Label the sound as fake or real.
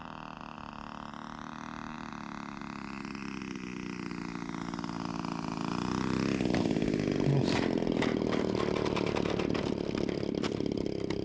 real